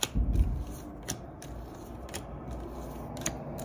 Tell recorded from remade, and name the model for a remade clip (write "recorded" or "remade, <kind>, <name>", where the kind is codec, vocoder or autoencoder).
recorded